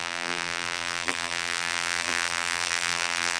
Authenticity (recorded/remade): remade